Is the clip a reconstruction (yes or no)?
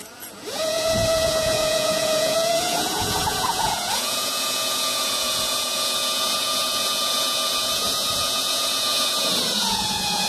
yes